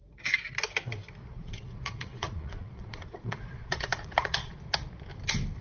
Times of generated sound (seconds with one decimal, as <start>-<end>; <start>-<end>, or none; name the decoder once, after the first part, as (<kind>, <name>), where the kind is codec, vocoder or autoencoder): 1.2-4.6 (vocoder, Vocos)